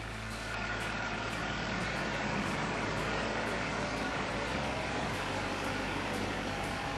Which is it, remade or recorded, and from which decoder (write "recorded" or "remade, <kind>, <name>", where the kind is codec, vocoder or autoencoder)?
remade, codec, DAC